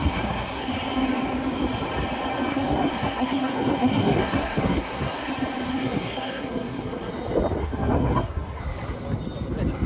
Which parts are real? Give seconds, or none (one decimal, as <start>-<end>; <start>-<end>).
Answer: 0.7-2.5; 5.3-5.7; 7.1-7.6; 8.6-9.9